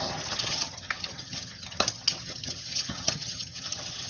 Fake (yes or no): yes